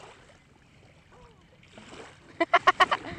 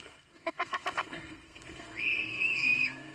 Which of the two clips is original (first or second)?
first